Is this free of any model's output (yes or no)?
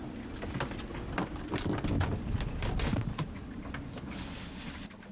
yes